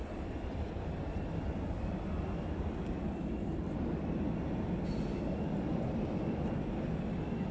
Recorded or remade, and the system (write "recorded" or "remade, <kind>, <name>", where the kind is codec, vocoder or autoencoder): recorded